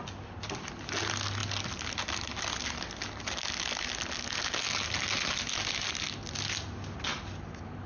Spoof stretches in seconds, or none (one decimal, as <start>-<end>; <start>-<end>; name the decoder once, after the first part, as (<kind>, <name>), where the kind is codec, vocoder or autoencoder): none

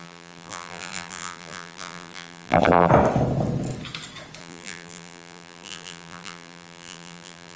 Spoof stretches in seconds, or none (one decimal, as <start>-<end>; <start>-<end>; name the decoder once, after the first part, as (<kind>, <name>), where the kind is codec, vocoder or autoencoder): 0.0-2.9 (vocoder, BigVGAN v2); 4.4-7.6

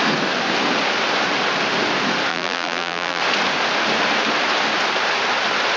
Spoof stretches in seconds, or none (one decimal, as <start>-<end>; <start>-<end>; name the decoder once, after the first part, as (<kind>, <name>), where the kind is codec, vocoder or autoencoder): 2.3-3.2 (vocoder, BigVGAN v2)

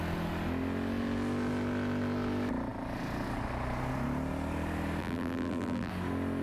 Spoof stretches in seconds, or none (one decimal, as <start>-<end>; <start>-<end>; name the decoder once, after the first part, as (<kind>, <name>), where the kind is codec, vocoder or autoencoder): 5.0-5.9 (vocoder, BigVGAN v2)

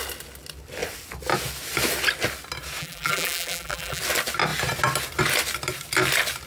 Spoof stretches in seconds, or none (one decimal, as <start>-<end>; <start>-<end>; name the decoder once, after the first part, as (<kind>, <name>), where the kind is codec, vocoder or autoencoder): 2.8-4.0 (vocoder, BigVGAN v2)

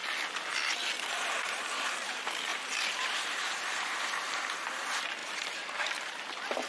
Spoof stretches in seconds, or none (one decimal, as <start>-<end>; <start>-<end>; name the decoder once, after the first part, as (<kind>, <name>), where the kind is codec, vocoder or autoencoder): 2.5-4.0 (vocoder, BigVGAN v2); 5.2-6.7

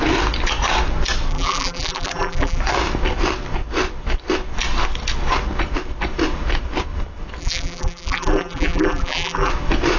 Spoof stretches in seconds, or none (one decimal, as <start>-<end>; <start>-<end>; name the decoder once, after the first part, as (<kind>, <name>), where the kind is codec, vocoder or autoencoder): 1.3-2.6 (vocoder, BigVGAN v2); 7.4-9.5